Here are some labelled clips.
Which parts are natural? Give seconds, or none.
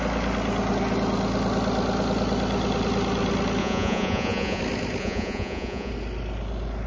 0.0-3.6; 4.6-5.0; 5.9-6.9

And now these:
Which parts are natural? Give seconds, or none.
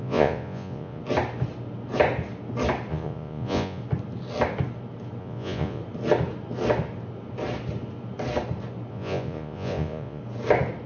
1.0-2.9; 3.8-5.2; 5.8-8.9; 10.2-10.9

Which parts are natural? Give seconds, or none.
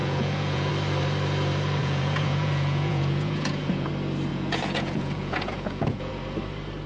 0.7-1.8; 3.9-4.3; 6.1-6.9